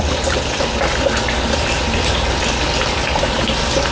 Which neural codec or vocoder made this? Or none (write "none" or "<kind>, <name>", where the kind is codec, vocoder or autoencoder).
none